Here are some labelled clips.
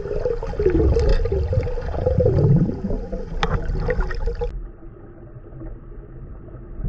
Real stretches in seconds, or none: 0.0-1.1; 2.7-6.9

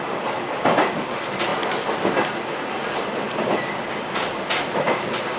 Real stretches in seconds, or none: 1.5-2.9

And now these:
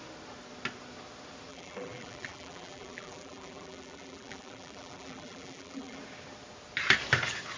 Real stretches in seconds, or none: 0.0-1.5; 6.0-7.6